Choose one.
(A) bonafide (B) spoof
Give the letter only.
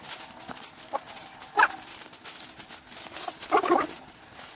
A